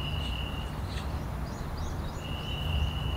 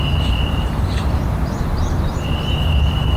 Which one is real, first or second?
first